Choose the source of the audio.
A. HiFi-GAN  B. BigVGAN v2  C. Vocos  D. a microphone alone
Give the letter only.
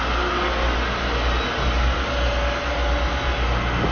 D